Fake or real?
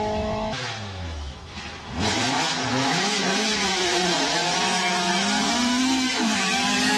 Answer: fake